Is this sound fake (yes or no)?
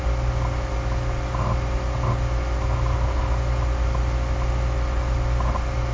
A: no